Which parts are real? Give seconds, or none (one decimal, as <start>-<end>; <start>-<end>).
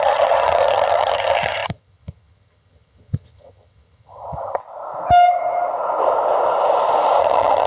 4.6-7.2